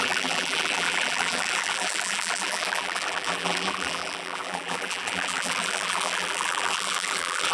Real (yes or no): no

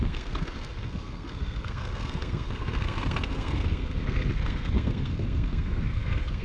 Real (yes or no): no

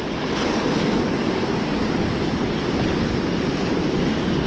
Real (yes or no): yes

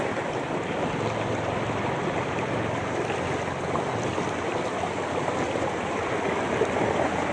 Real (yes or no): yes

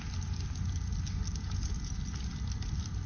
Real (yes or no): yes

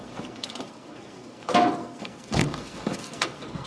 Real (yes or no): no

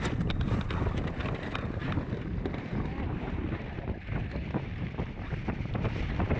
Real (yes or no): yes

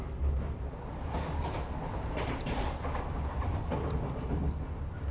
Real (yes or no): yes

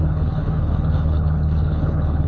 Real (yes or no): no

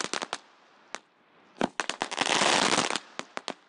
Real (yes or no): yes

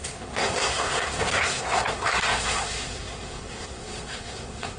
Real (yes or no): no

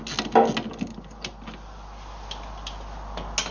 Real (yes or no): yes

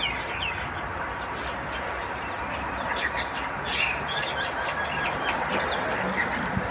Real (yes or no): yes